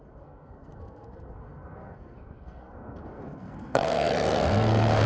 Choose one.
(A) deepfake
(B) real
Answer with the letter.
A